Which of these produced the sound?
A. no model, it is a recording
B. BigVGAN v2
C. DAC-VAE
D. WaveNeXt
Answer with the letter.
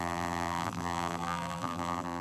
B